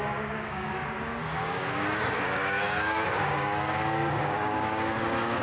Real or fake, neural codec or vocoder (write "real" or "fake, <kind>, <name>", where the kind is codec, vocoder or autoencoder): fake, codec, DAC